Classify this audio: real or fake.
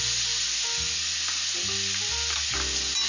real